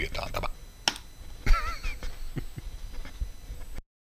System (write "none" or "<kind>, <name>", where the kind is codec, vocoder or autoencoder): none